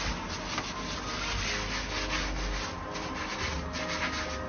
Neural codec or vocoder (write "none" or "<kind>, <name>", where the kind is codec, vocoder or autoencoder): none